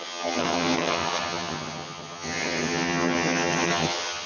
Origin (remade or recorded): remade